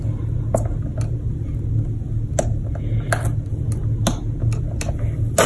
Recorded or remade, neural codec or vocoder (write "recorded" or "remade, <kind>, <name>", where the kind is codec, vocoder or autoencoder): recorded